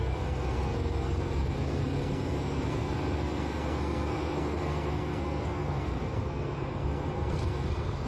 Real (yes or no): no